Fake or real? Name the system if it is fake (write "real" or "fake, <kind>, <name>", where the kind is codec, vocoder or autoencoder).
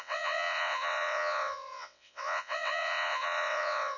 fake, vocoder, WaveNeXt